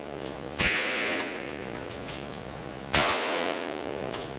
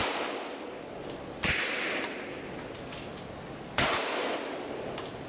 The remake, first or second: first